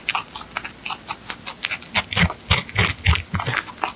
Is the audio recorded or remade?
recorded